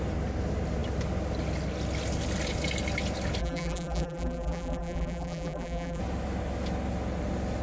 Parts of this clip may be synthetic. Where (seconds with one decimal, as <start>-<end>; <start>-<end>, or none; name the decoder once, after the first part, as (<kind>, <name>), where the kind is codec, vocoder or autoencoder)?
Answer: 3.4-6.0 (vocoder, BigVGAN v2)